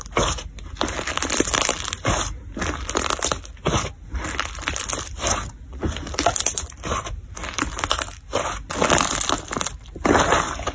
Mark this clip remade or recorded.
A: recorded